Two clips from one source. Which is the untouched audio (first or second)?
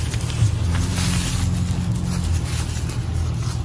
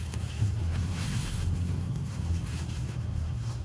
first